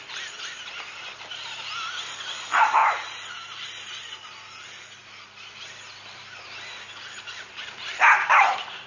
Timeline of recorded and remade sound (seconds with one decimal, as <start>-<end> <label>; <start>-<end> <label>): 0.0-8.9 recorded